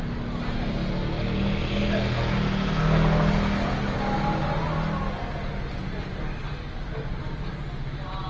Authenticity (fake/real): real